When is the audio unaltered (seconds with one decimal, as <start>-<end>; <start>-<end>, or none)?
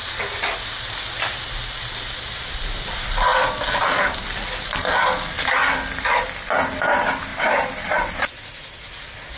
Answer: 0.0-7.3; 8.1-9.4